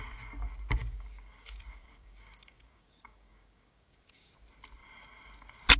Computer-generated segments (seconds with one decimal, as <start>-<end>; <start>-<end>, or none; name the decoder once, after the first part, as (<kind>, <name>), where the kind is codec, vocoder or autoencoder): 0.8-4.3 (codec, DAC)